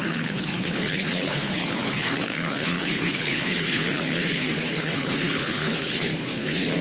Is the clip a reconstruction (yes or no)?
yes